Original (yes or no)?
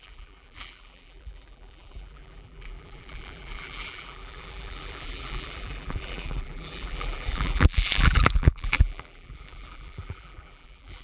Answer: no